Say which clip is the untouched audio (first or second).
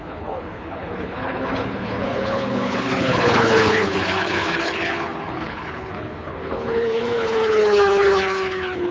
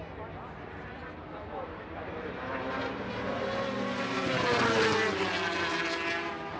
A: second